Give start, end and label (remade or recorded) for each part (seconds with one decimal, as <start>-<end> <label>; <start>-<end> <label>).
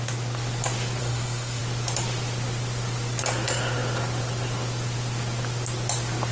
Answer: 0.0-1.0 recorded; 1.0-1.6 remade; 1.6-6.3 recorded